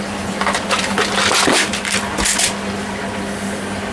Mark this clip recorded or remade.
recorded